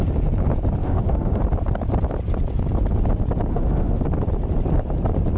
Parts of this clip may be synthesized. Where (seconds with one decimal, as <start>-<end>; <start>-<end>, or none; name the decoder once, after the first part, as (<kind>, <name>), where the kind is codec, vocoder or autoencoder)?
0.8-1.4 (autoencoder, DAC-VAE); 3.5-4.0